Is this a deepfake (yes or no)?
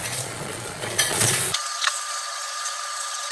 yes